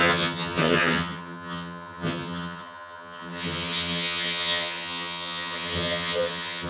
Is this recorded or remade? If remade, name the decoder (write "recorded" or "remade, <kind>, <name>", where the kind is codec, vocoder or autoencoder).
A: remade, vocoder, HiFi-GAN